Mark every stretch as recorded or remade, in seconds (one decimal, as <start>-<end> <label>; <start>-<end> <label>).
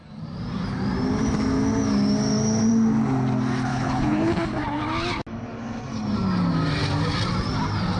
0.0-3.7 recorded; 3.7-4.3 remade; 4.3-8.0 recorded